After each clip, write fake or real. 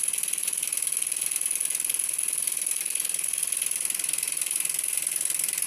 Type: real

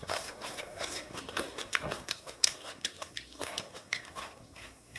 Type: fake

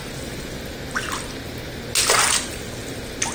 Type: real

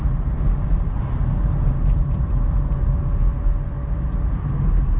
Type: real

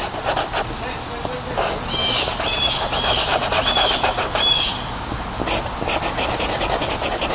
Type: real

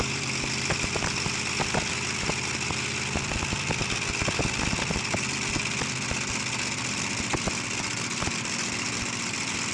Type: real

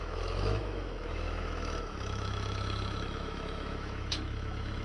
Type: fake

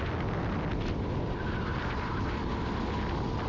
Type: real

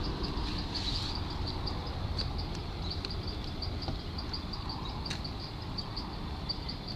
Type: real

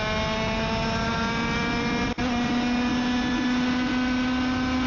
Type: real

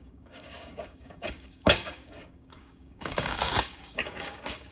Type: fake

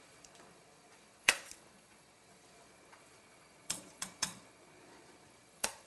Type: fake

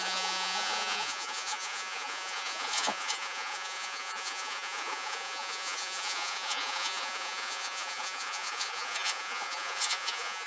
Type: fake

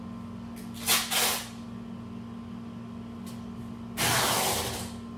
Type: real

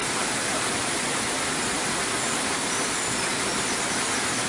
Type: real